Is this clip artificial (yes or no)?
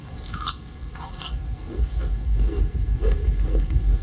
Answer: yes